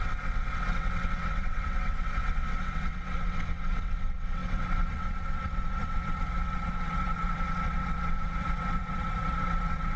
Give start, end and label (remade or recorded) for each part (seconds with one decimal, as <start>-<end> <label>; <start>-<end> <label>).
0.0-10.0 remade